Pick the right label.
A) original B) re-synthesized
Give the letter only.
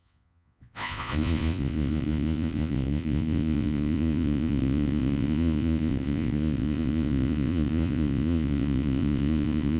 B